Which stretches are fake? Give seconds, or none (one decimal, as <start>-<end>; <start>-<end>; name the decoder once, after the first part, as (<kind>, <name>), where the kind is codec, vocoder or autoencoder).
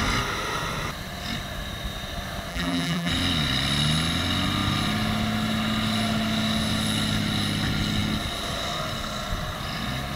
2.5-3.1 (vocoder, BigVGAN v2)